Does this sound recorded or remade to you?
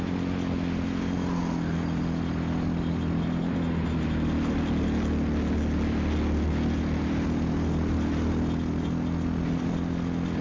recorded